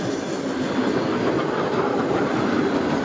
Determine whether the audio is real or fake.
real